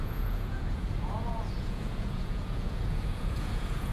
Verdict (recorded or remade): remade